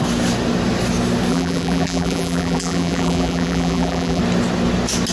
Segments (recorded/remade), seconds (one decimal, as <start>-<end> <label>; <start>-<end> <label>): 0.0-1.3 recorded; 1.3-4.2 remade; 4.2-5.1 recorded